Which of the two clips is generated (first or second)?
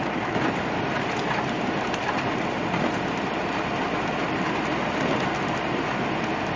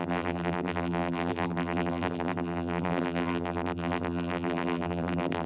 second